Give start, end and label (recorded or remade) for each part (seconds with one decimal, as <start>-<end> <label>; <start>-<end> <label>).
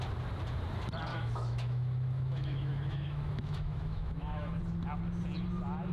0.0-1.1 recorded; 1.1-4.6 remade; 4.6-5.9 recorded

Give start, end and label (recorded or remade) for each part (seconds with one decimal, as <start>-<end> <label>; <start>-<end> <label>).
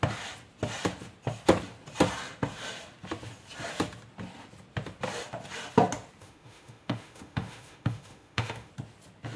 0.0-6.2 recorded; 6.2-8.7 remade; 8.7-9.4 recorded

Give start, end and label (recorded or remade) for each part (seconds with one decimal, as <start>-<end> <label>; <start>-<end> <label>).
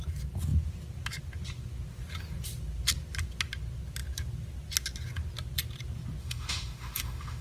0.0-6.2 recorded; 6.2-7.4 remade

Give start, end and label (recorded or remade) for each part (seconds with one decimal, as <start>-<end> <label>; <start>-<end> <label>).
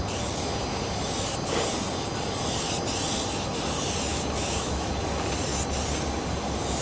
0.0-4.1 recorded; 4.1-4.9 remade; 4.9-6.8 recorded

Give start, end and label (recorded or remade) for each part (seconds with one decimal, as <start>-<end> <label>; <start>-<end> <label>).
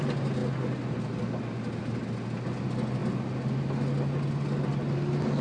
0.0-5.4 recorded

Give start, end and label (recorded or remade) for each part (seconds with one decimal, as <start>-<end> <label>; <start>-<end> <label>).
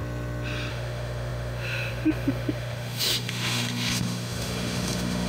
0.0-0.7 recorded; 0.7-5.3 remade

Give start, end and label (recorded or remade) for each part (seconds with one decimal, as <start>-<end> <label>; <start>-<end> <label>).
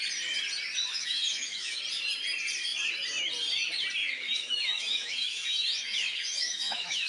0.0-0.9 recorded; 0.9-1.8 remade; 1.8-4.0 recorded; 4.0-7.1 remade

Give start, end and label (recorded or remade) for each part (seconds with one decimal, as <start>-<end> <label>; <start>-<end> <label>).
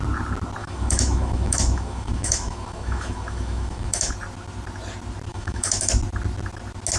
0.0-0.6 recorded; 0.6-4.1 remade; 4.1-5.3 recorded; 5.3-5.9 remade; 5.9-7.0 recorded